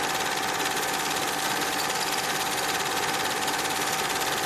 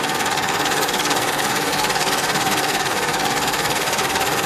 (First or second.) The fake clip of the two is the second